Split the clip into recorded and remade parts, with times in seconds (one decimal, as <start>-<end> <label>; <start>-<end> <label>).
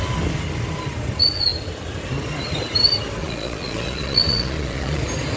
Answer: 0.0-3.2 recorded; 3.2-5.0 remade; 5.0-5.4 recorded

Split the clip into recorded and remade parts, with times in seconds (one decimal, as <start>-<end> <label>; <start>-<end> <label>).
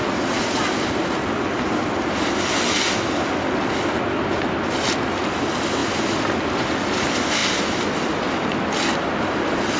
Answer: 0.0-0.6 remade; 0.6-9.8 recorded